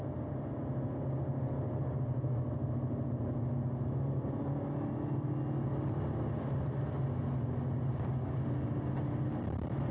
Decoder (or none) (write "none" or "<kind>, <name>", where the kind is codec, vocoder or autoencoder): none